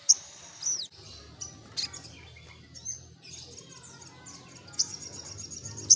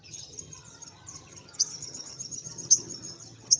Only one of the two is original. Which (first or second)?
first